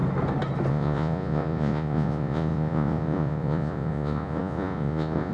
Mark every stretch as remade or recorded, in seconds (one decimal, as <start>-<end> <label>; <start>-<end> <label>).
0.0-0.7 recorded; 0.7-5.3 remade